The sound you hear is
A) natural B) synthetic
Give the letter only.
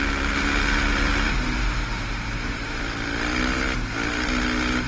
A